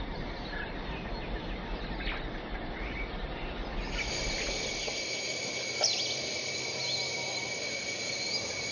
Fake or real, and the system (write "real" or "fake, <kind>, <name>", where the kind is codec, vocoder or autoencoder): real